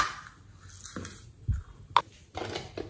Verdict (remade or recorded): recorded